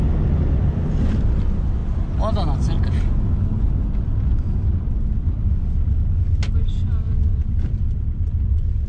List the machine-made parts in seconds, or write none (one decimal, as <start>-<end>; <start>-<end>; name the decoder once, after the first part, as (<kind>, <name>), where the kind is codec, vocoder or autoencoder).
none